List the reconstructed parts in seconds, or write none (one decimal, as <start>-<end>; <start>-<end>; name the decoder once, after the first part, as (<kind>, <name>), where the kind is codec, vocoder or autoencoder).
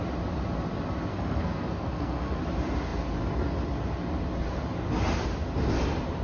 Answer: 1.1-2.4 (codec, SNAC)